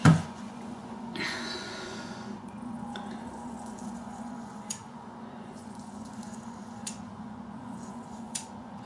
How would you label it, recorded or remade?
remade